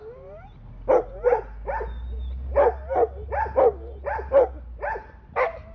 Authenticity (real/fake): real